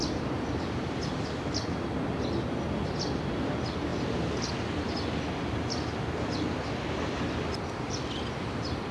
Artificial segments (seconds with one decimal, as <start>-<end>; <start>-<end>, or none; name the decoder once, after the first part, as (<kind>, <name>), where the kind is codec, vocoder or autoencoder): none